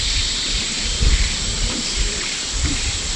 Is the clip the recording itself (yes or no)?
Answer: no